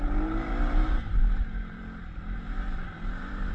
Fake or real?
fake